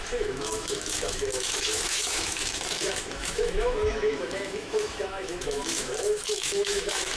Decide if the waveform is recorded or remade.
remade